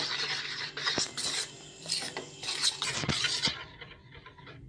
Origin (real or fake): real